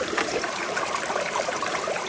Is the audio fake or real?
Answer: fake